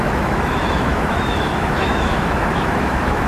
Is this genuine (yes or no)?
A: no